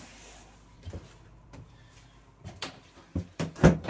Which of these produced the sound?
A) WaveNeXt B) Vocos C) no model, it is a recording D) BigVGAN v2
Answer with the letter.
D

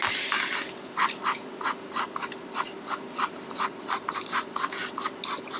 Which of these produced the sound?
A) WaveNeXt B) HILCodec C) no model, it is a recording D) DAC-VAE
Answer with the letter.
C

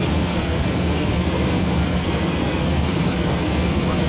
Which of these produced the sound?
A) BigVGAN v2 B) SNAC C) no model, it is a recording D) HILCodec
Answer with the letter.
B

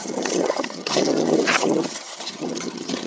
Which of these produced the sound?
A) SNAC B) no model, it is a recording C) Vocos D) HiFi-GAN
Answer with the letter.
D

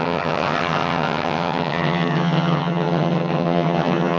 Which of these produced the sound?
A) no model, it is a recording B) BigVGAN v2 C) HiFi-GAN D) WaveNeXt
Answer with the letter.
C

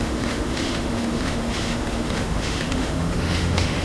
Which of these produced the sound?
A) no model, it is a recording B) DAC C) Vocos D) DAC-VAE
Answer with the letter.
D